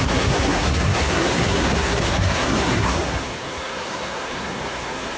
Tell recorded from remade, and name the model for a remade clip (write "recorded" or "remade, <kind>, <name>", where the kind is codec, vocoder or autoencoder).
remade, codec, SNAC